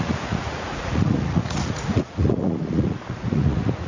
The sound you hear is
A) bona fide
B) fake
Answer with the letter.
B